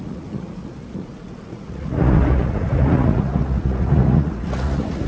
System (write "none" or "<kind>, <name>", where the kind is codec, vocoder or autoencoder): vocoder, Vocos